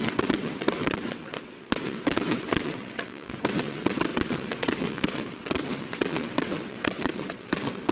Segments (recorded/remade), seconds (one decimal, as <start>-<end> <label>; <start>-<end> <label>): 0.0-7.9 remade